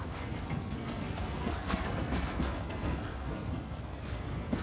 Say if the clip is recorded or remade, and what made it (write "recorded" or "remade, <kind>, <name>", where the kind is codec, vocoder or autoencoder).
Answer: remade, codec, SNAC